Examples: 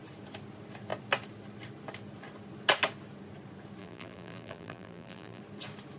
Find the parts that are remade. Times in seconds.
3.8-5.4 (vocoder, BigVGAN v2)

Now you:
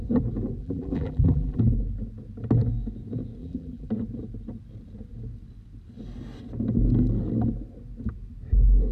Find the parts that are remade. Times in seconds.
0.6-1.6 (vocoder, BigVGAN v2); 3.4-3.9

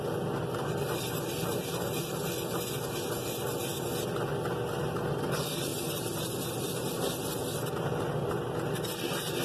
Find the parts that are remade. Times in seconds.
none

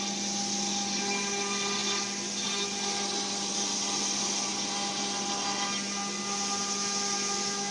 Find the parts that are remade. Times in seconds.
none

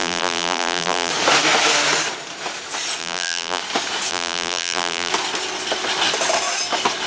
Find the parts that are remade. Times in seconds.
0.0-1.1 (vocoder, BigVGAN v2); 3.0-3.6; 4.1-5.1

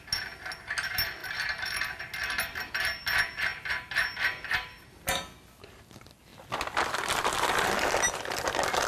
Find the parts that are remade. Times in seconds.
3.5-5.3 (vocoder, BigVGAN v2)

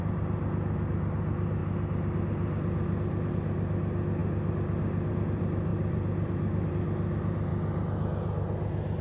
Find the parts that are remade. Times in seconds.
5.7-6.7 (vocoder, BigVGAN v2)

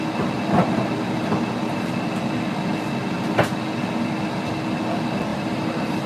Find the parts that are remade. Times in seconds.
5.3-6.1 (vocoder, BigVGAN v2)